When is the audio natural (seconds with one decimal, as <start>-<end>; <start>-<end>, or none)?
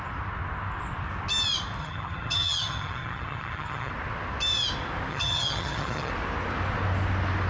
0.0-1.8; 3.9-5.1; 6.1-7.5